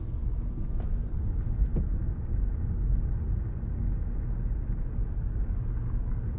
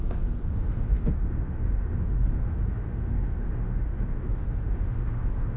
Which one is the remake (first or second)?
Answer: second